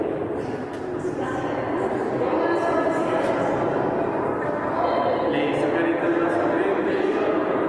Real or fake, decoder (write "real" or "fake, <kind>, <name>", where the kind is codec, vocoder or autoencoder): real